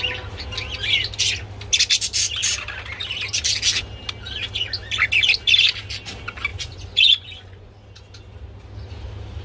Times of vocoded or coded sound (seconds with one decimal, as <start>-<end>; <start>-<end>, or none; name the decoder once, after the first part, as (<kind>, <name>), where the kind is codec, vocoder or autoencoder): 6.5-7.7 (vocoder, Vocos)